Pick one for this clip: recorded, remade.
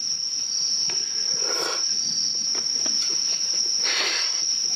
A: recorded